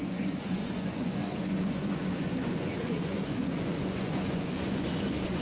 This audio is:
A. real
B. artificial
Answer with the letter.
B